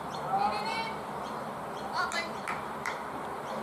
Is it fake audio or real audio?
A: fake